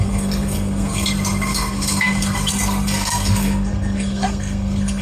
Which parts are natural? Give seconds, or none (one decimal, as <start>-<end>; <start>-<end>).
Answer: none